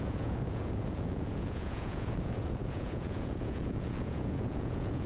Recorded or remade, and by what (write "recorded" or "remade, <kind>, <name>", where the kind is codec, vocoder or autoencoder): remade, vocoder, Vocos